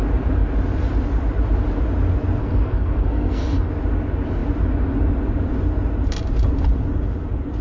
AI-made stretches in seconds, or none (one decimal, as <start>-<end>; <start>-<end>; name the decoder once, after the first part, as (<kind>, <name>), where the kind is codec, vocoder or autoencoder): 2.4-3.7 (codec, SNAC)